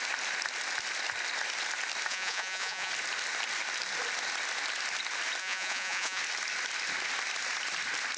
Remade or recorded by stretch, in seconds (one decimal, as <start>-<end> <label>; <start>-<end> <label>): 0.0-2.1 recorded; 2.1-2.9 remade; 2.9-5.4 recorded; 5.4-6.2 remade; 6.2-8.2 recorded